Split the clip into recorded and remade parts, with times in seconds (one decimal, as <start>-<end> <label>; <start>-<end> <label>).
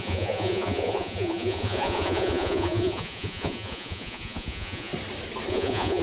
0.0-4.9 remade; 4.9-5.5 recorded; 5.5-6.0 remade